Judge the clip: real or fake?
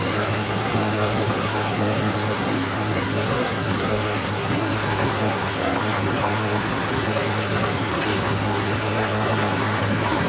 fake